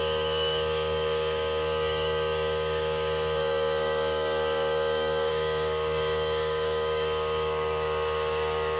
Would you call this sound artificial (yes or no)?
yes